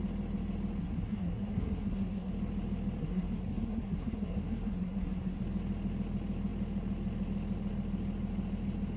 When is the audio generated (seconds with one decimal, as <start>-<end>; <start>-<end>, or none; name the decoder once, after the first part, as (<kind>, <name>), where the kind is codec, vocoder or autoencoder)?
0.8-2.3 (codec, SNAC); 3.0-5.4